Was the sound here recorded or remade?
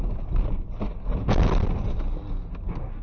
recorded